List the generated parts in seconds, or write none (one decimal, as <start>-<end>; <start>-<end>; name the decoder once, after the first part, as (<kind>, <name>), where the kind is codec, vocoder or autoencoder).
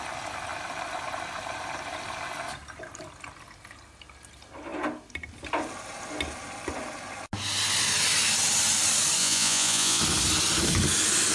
9.2-10.0 (vocoder, Vocos)